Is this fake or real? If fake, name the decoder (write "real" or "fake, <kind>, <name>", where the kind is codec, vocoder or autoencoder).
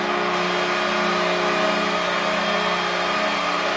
real